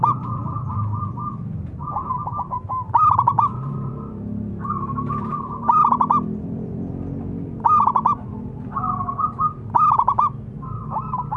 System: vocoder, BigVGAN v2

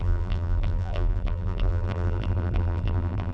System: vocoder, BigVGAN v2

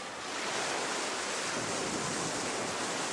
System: none